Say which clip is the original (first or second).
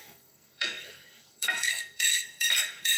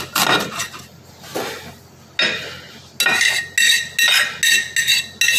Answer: second